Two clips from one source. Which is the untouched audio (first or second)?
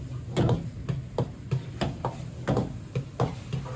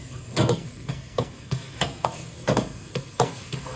first